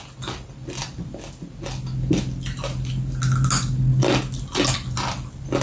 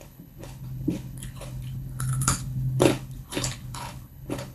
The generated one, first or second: second